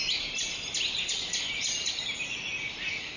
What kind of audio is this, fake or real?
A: real